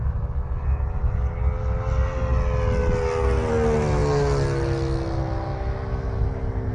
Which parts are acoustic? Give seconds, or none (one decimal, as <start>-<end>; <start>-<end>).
0.0-6.7

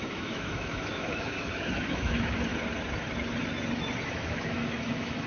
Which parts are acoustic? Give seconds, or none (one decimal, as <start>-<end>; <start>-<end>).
2.5-4.1

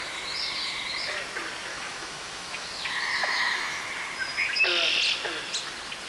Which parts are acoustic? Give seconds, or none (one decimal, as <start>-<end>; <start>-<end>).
0.0-1.7; 2.7-3.2; 3.9-6.1

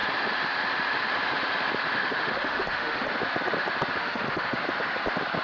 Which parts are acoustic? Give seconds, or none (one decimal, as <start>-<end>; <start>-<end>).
0.0-2.0; 3.1-4.0; 4.6-5.4

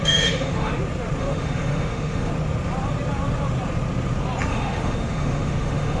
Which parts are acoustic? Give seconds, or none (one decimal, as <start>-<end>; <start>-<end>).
0.7-1.2; 2.3-4.5

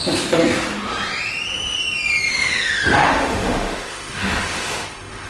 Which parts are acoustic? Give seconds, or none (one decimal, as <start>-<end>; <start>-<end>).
0.0-2.3